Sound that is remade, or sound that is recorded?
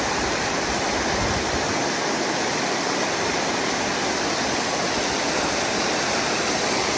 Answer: recorded